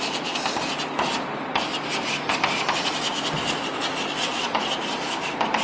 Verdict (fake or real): real